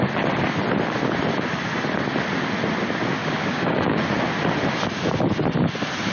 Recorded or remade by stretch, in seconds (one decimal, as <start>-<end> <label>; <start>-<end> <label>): 0.0-3.2 recorded; 3.2-4.0 remade; 4.0-6.1 recorded